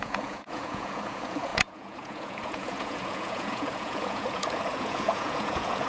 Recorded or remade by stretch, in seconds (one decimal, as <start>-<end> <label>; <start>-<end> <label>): 0.0-5.9 remade

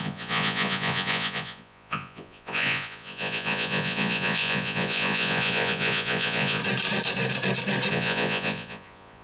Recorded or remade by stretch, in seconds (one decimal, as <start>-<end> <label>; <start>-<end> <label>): 0.0-6.6 remade; 6.6-7.9 recorded; 7.9-9.2 remade

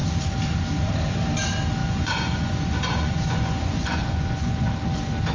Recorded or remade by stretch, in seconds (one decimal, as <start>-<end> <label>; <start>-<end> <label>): 0.0-1.8 recorded; 1.8-4.7 remade; 4.7-5.3 recorded